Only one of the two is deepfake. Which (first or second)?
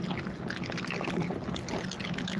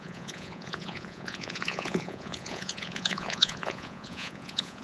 second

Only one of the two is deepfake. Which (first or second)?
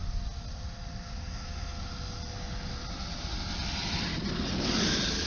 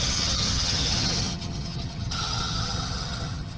second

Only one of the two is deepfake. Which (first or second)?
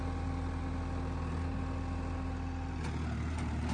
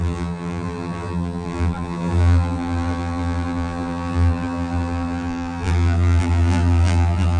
second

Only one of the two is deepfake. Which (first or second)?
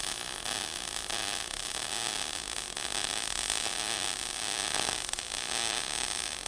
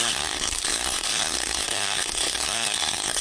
second